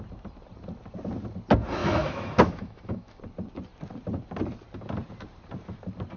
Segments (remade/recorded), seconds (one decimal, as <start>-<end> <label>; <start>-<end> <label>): 0.0-1.8 recorded; 1.8-3.2 remade; 3.2-6.2 recorded